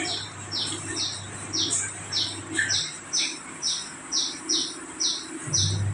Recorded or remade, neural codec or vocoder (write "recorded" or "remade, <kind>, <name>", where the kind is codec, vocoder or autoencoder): recorded